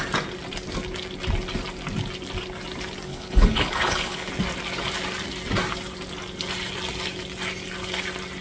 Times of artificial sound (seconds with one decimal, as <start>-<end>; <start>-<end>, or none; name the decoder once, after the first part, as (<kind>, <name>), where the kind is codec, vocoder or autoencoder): 3.1-4.3 (codec, HILCodec)